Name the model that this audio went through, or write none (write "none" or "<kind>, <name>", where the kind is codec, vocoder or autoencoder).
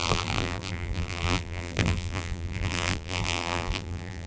vocoder, BigVGAN v2